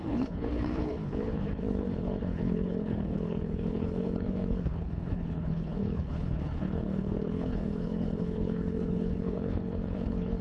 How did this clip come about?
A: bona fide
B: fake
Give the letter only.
B